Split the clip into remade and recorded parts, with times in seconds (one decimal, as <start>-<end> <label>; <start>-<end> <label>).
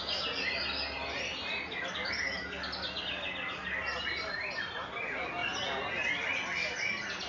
0.0-7.3 recorded